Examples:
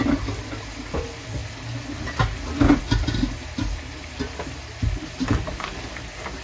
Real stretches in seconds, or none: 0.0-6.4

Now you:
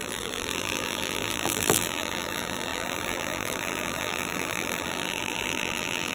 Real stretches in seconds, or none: none

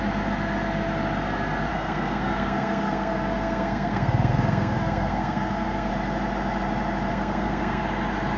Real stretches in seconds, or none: 0.0-1.7; 5.9-7.1; 7.8-8.4

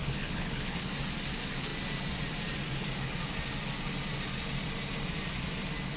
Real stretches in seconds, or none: 0.9-6.0

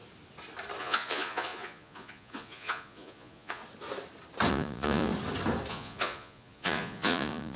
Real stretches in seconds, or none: 0.0-0.8; 3.6-4.5; 5.1-5.7

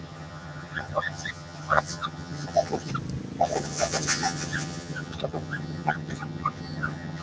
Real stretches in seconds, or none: 2.9-3.4

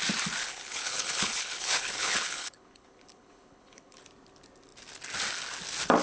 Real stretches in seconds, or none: 0.0-0.4; 4.0-6.0

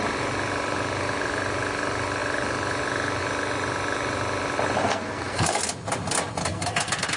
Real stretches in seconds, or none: 0.0-4.8; 5.6-6.4